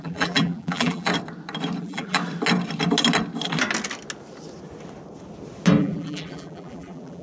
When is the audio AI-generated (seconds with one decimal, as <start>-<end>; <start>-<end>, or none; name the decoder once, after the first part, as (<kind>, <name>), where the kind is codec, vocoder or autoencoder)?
0.0-1.1 (vocoder, BigVGAN v2); 1.8-2.2; 5.8-7.2